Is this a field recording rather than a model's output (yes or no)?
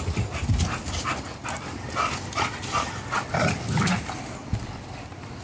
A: yes